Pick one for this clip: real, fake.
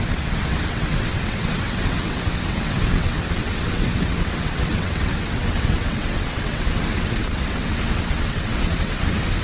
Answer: fake